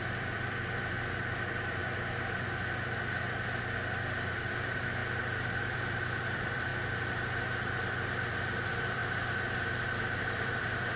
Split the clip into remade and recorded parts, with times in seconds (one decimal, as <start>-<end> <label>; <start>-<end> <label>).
0.0-1.8 remade; 1.8-4.3 recorded; 4.3-5.0 remade; 5.0-5.6 recorded; 5.6-6.7 remade; 6.7-8.3 recorded; 8.3-9.0 remade; 9.0-10.2 recorded; 10.2-11.0 remade